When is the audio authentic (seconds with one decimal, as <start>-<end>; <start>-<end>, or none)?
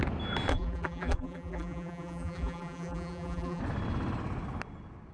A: 0.0-0.5; 3.6-5.1